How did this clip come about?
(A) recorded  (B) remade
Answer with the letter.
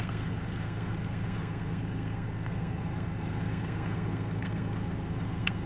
B